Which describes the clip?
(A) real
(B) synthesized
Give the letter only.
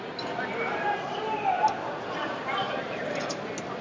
A